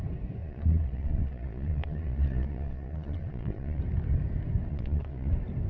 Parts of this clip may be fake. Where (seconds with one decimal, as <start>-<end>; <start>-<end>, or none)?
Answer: 0.4-3.8; 4.7-5.3